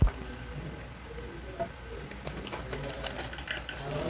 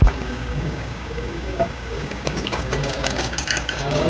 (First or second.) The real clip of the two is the first